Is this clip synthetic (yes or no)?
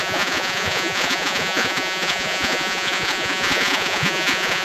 yes